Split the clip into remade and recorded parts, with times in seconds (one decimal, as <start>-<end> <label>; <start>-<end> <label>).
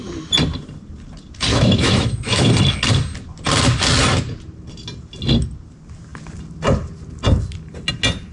0.0-1.5 recorded; 1.5-2.5 remade; 2.5-8.3 recorded